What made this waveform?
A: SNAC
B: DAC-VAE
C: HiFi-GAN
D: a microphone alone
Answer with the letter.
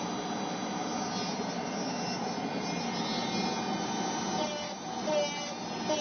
D